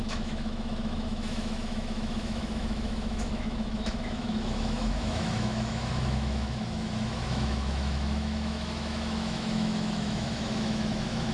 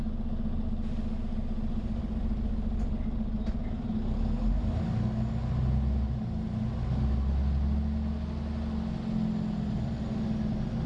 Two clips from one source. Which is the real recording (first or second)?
second